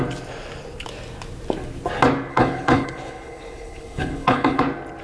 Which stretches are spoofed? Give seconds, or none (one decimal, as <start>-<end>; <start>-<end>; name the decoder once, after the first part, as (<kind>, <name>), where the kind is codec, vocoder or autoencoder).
2.3-4.6 (codec, HILCodec)